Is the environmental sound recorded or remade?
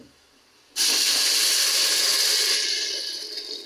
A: recorded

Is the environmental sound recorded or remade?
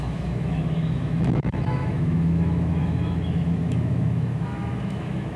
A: remade